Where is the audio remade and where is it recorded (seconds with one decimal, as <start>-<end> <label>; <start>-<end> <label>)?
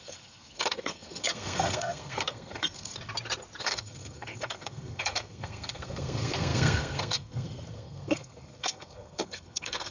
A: 0.0-2.9 remade; 2.9-3.6 recorded; 3.6-9.9 remade